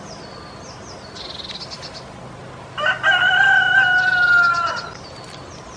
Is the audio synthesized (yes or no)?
no